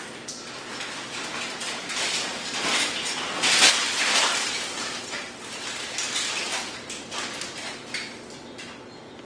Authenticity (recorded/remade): recorded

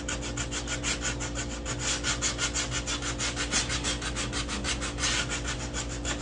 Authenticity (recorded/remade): recorded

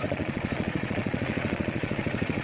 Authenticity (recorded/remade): remade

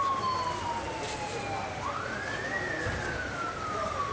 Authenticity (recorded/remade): recorded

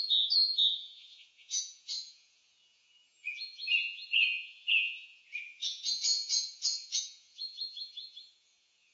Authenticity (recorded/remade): remade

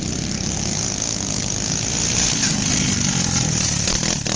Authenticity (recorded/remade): recorded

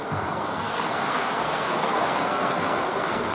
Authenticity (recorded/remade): remade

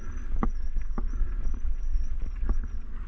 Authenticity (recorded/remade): recorded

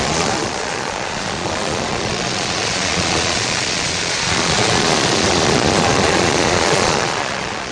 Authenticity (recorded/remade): remade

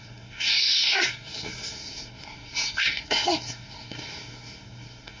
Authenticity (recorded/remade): remade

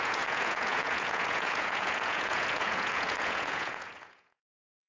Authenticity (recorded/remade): remade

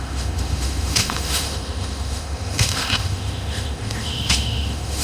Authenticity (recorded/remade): remade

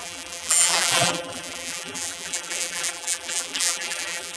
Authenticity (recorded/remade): remade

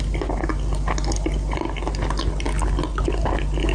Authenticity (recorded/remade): recorded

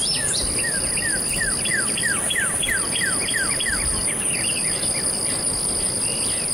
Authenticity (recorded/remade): recorded